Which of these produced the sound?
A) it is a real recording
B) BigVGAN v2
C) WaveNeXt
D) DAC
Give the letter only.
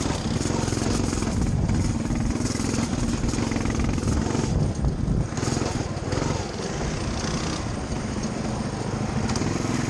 A